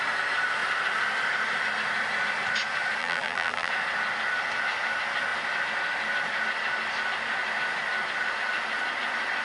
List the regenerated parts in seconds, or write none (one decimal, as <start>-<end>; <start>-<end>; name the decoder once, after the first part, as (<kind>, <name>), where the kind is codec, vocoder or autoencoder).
3.0-3.7 (vocoder, BigVGAN v2)